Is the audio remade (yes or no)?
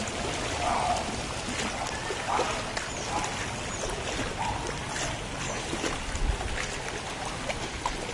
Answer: no